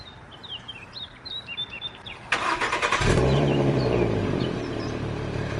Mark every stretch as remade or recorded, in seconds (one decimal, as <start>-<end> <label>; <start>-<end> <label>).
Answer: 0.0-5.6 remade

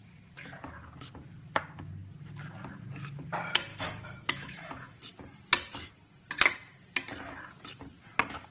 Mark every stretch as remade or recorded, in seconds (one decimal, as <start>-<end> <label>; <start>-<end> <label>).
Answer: 0.0-3.7 recorded; 3.7-5.0 remade; 5.0-8.5 recorded

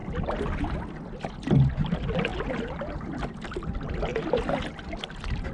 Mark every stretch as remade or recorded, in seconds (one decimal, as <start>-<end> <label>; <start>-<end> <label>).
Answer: 0.0-5.5 recorded

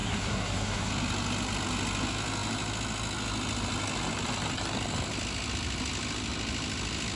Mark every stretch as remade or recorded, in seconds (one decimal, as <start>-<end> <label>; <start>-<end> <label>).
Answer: 0.0-0.9 remade; 0.9-7.2 recorded

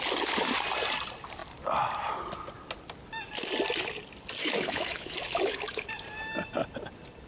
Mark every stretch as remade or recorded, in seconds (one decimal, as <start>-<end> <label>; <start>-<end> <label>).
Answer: 0.0-4.4 recorded; 4.4-5.9 remade; 5.9-7.3 recorded